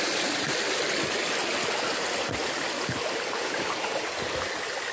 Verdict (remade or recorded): recorded